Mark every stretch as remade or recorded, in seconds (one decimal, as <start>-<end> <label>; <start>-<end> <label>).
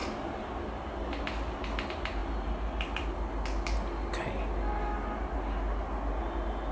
0.0-6.7 recorded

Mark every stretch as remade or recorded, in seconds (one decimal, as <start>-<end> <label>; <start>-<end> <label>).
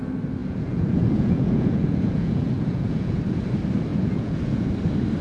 0.0-0.4 recorded; 0.4-3.2 remade; 3.2-3.9 recorded; 3.9-4.7 remade; 4.7-5.2 recorded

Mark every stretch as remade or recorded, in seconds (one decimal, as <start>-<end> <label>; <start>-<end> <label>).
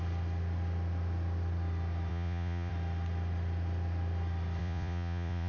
0.0-2.1 recorded; 2.1-2.7 remade; 2.7-4.6 recorded; 4.6-5.5 remade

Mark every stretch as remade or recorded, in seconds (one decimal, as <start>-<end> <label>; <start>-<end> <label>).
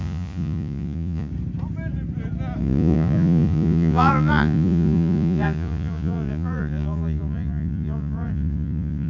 0.0-1.3 remade; 1.3-2.6 recorded; 2.6-9.1 remade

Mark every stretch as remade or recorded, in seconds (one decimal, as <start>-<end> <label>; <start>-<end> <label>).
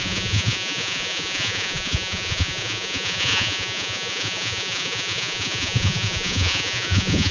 0.0-7.3 remade